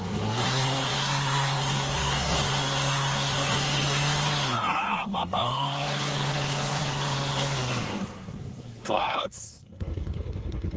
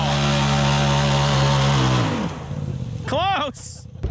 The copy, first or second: first